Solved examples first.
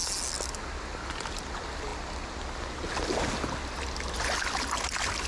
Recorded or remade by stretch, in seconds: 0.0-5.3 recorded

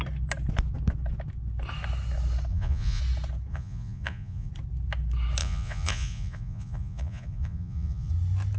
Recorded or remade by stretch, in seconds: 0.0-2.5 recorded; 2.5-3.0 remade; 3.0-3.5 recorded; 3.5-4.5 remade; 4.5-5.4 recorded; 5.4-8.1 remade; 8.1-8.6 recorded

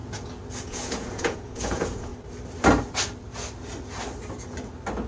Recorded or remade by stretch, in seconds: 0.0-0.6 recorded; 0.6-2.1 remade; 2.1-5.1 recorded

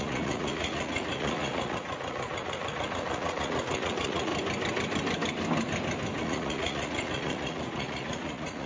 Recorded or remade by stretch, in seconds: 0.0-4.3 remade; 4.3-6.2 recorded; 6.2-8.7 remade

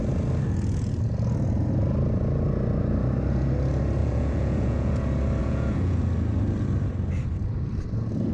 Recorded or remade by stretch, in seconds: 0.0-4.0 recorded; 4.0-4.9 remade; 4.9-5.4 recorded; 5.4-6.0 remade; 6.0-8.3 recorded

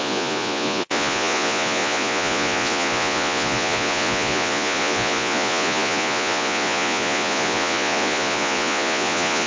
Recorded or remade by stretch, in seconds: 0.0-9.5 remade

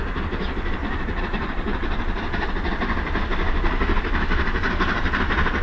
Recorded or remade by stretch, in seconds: 0.0-0.8 recorded; 0.8-2.5 remade; 2.5-5.6 recorded